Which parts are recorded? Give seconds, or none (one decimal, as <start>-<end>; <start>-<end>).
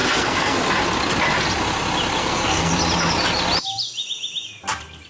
0.6-2.2; 2.7-5.1